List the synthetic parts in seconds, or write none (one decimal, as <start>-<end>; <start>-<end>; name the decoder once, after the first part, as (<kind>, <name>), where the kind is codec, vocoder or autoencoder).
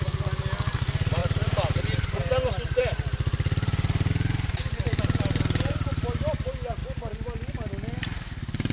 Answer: 1.2-1.8 (vocoder, BigVGAN v2); 2.2-4.1; 6.8-7.7